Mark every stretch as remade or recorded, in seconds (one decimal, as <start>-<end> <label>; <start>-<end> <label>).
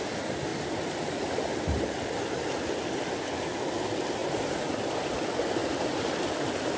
0.0-4.2 recorded; 4.2-4.7 remade; 4.7-5.6 recorded; 5.6-6.8 remade